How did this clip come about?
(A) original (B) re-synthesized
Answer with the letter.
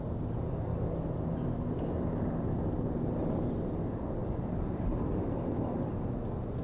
A